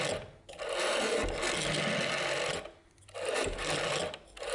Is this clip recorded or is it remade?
recorded